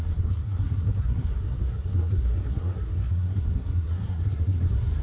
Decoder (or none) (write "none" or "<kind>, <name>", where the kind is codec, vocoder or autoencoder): codec, SNAC